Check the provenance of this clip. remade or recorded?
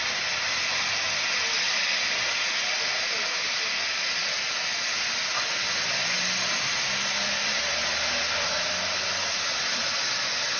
recorded